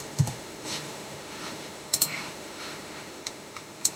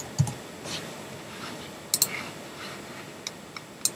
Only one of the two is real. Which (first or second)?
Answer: second